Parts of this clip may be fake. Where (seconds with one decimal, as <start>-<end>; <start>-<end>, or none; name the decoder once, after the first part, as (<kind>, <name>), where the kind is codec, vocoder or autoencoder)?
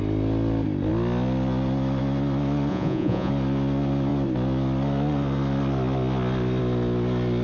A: 2.7-3.3 (vocoder, Vocos)